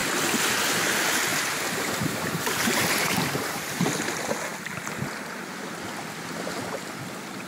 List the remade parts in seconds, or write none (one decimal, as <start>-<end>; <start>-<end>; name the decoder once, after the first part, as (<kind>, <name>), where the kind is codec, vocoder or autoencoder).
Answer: 1.3-3.8 (vocoder, BigVGAN v2)